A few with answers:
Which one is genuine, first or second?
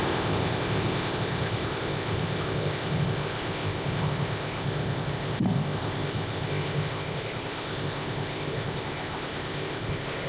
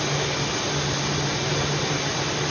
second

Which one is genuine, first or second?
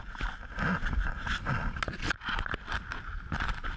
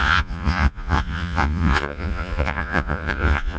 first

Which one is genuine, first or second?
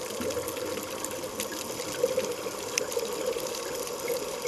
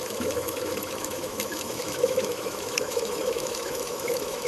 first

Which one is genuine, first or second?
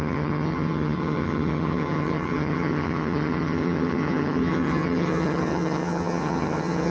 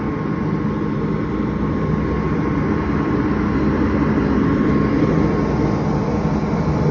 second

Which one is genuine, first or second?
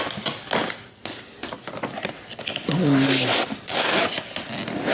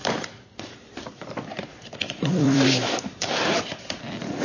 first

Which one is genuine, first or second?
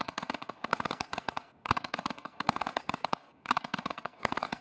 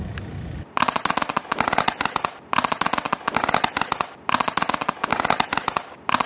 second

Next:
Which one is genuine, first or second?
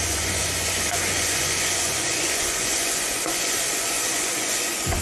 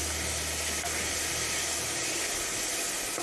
second